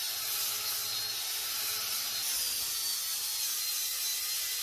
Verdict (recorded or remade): recorded